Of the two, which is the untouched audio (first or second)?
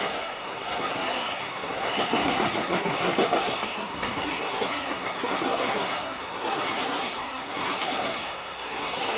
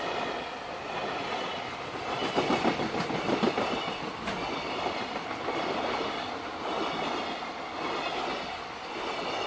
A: second